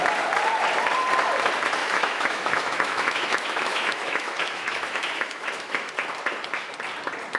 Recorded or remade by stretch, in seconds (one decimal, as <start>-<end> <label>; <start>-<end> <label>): 0.0-1.8 recorded; 1.8-5.9 remade; 5.9-7.4 recorded